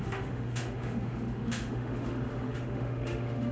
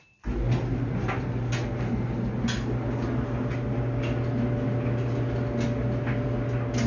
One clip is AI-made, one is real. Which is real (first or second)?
second